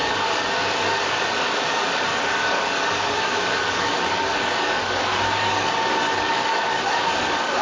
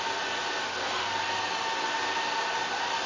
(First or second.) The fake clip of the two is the first